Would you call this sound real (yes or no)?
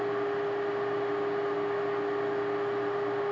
yes